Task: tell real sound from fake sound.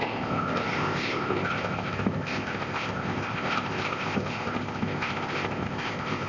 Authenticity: fake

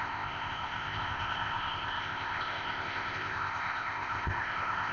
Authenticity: fake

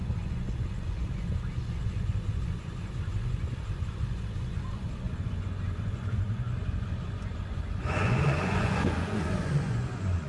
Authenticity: fake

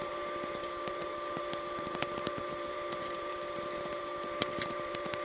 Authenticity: fake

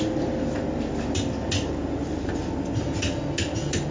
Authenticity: real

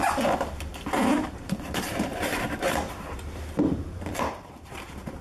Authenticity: fake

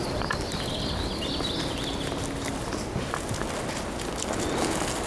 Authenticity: real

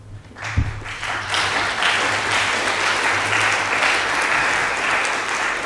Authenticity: real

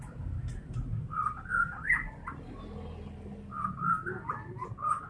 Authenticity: real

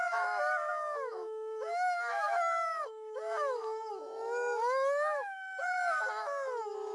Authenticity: fake